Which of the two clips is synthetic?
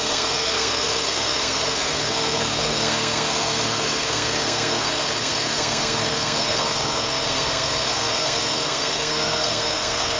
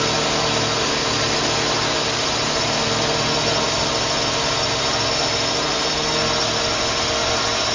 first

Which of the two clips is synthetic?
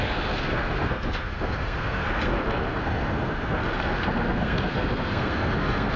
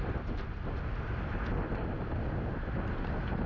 first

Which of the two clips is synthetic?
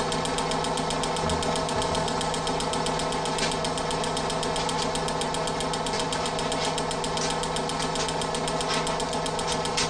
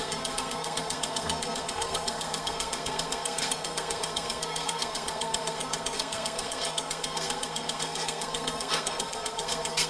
second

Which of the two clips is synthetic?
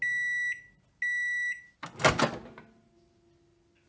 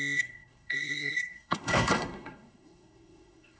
second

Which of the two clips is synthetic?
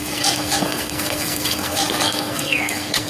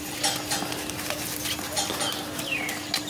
first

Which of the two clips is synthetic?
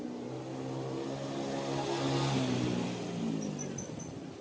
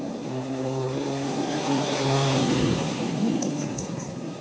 second